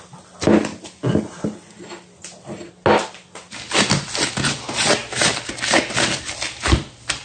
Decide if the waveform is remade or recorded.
recorded